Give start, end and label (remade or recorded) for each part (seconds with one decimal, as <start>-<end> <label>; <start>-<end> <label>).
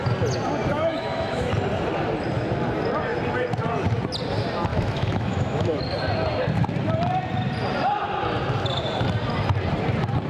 0.0-0.7 recorded; 0.7-1.5 remade; 1.5-4.7 recorded; 4.7-5.8 remade; 5.8-10.3 recorded